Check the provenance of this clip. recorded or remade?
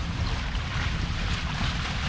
recorded